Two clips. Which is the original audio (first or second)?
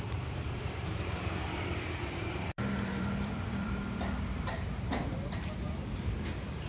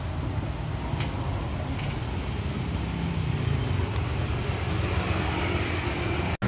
second